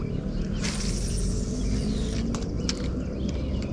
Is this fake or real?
real